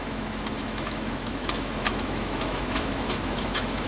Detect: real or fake fake